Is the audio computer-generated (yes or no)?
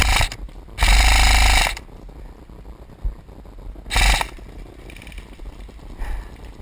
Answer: no